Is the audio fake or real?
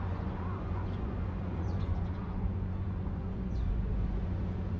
fake